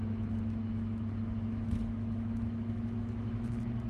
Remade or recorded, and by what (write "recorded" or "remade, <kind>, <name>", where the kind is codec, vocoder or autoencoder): remade, autoencoder, DAC-VAE